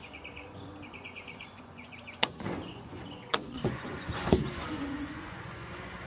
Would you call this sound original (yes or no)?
no